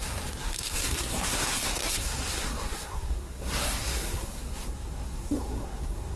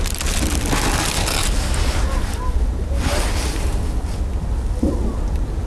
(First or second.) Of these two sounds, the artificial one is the first